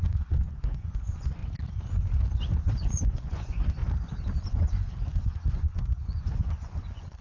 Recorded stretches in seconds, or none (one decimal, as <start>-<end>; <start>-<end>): 1.4-2.4; 3.8-4.4